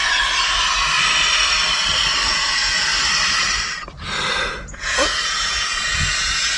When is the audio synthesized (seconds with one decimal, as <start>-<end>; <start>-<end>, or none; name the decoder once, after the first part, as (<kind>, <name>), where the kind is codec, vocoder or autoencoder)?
2.3-2.9 (vocoder, Vocos); 4.4-6.6